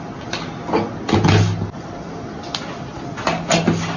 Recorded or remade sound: recorded